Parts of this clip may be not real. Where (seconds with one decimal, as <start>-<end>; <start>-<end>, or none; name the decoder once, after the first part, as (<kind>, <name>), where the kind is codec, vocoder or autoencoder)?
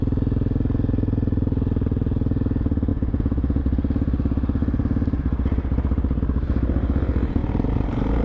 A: 2.9-3.6 (vocoder, Vocos)